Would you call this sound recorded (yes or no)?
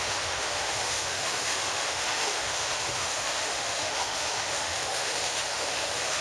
no